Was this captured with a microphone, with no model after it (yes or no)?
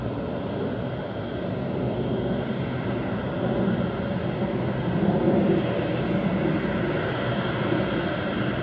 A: yes